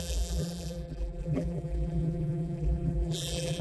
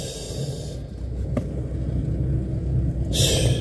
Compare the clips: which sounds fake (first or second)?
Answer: first